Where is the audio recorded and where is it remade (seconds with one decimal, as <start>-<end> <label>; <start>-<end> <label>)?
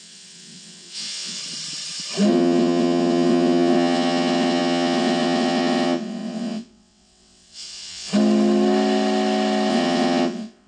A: 0.0-1.4 remade; 1.4-2.3 recorded; 2.3-8.1 remade; 8.1-9.7 recorded; 9.7-10.7 remade